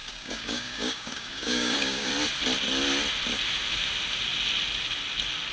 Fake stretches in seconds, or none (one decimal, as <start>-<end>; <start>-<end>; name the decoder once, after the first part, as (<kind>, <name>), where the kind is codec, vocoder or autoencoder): 0.0-2.1 (codec, DAC)